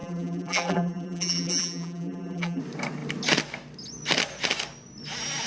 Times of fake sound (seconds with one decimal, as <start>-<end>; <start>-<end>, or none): 0.0-2.6

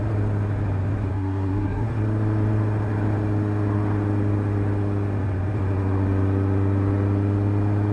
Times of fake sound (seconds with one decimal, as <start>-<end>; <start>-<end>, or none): 1.1-1.9